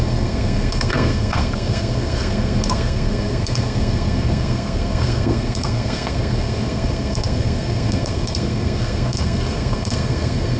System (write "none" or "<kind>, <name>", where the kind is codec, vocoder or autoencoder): codec, SNAC